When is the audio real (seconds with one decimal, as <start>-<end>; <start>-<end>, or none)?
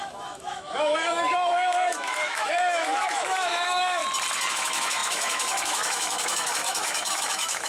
4.0-4.5